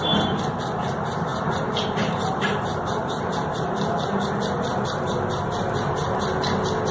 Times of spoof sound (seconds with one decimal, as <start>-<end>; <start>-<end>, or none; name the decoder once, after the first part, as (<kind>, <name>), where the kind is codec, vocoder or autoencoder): 1.3-4.3 (vocoder, BigVGAN v2)